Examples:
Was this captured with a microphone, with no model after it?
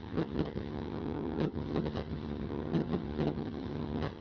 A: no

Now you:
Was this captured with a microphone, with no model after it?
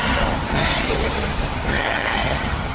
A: no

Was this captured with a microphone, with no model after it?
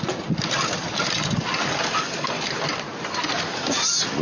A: yes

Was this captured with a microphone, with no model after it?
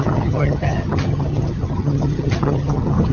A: no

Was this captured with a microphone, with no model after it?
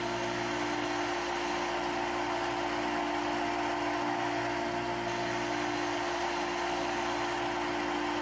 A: yes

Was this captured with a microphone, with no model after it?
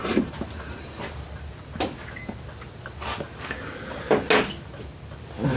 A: yes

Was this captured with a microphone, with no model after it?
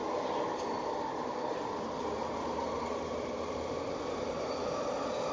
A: yes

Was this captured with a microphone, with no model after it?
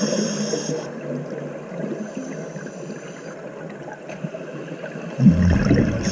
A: yes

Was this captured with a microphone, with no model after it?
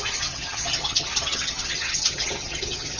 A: no